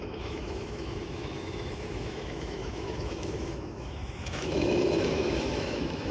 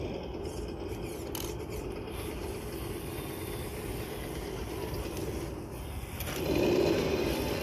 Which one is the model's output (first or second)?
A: first